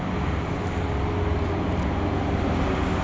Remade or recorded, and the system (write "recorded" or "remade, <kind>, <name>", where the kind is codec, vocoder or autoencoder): recorded